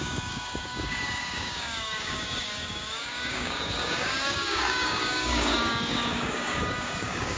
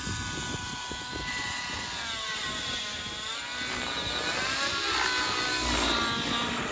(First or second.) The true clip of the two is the second